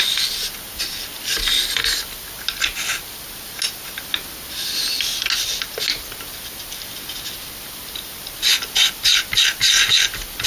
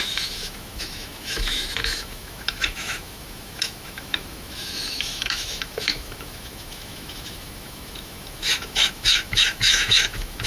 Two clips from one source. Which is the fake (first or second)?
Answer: second